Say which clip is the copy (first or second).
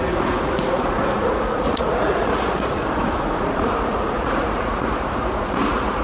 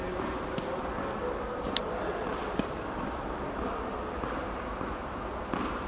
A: first